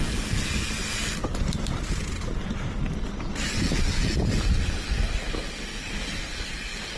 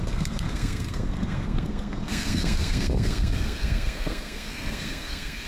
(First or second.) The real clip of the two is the first